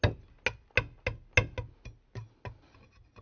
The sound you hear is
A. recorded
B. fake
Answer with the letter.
A